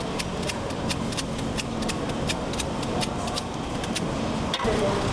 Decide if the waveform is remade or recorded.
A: recorded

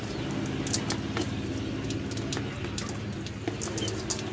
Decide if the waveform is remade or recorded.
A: recorded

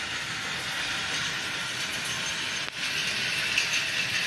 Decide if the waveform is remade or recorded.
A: recorded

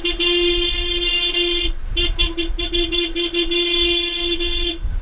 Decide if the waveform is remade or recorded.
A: recorded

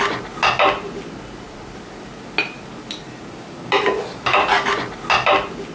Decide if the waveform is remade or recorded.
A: recorded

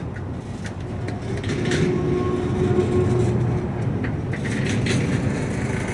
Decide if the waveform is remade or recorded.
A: recorded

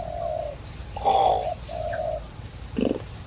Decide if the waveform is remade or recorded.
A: recorded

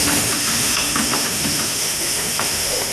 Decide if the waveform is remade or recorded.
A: remade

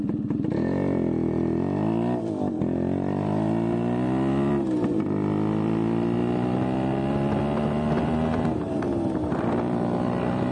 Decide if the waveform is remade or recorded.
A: remade